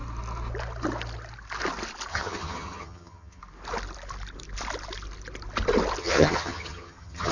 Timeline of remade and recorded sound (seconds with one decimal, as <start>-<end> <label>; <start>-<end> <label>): 0.0-2.1 recorded; 2.1-3.4 remade; 3.4-6.0 recorded; 6.0-7.3 remade